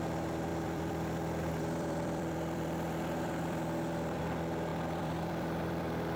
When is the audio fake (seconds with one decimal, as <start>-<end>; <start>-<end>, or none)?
0.5-4.2; 4.7-6.2